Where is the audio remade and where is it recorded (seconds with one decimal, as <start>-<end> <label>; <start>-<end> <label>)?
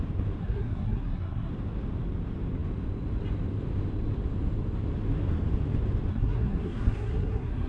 0.0-0.4 recorded; 0.4-1.5 remade; 1.5-6.1 recorded; 6.1-7.7 remade